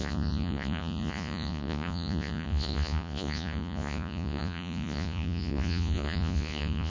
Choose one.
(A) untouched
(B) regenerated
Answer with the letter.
B